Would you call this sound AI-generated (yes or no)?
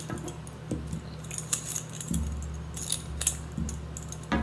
no